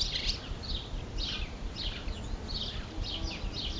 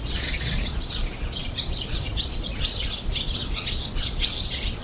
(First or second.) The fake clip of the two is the second